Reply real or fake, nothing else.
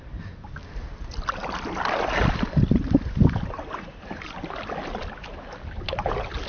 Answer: real